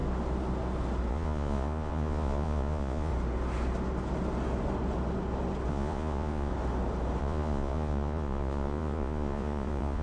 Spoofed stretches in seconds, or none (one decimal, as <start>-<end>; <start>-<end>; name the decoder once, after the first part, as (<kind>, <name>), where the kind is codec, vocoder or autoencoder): 1.1-3.1 (vocoder, Vocos); 5.7-6.5; 7.2-10.0